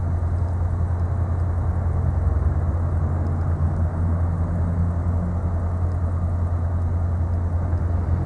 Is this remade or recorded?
recorded